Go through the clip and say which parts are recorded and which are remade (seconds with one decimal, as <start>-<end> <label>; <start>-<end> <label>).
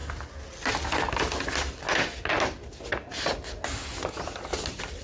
0.0-5.0 recorded